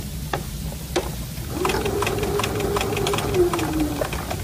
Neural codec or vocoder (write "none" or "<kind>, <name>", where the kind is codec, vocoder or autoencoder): none